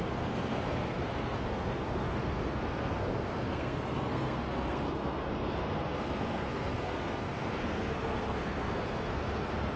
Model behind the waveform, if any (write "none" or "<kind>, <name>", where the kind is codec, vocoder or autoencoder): codec, SNAC